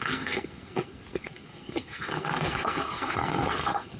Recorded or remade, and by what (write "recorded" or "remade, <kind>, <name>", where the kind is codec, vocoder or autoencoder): remade, codec, SNAC